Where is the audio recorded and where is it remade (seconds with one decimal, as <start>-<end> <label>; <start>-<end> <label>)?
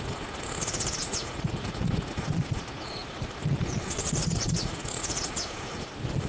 0.0-1.0 recorded; 1.0-2.2 remade; 2.2-4.2 recorded; 4.2-5.2 remade; 5.2-6.3 recorded